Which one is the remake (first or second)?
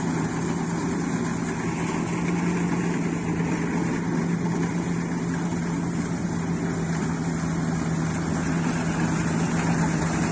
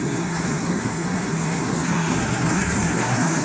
second